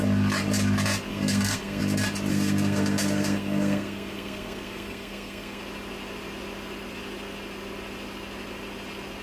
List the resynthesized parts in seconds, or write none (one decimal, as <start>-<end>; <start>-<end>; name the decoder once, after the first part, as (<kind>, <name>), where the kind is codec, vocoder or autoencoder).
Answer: 1.1-1.8 (codec, SNAC); 2.3-5.6